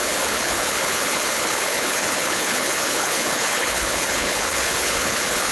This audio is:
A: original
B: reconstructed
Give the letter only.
B